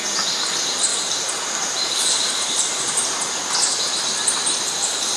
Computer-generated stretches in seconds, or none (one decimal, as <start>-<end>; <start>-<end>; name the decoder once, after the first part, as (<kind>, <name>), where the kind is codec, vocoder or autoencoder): 0.9-2.8 (vocoder, BigVGAN v2)